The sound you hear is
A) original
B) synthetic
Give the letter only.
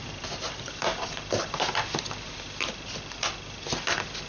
A